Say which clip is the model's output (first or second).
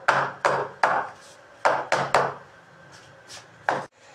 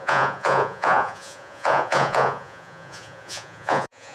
second